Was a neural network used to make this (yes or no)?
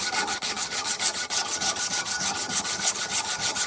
yes